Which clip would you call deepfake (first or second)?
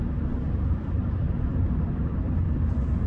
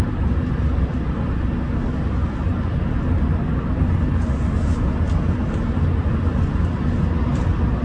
first